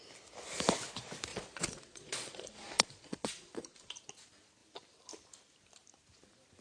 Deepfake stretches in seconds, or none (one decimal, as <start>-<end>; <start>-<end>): 1.3-4.0